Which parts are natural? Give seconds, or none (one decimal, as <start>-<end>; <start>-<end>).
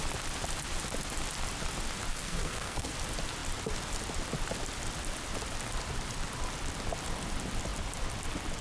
0.0-2.1; 2.9-8.6